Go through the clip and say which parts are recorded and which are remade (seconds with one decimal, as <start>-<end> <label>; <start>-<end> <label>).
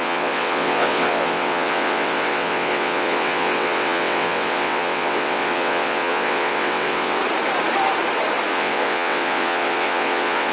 0.0-7.2 remade; 7.2-8.5 recorded; 8.5-10.5 remade